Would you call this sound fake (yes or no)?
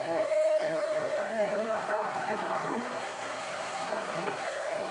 yes